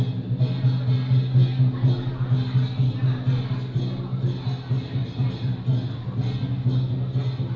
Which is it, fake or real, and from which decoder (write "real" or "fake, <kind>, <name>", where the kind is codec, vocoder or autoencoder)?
real